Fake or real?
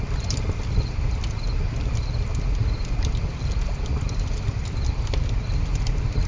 real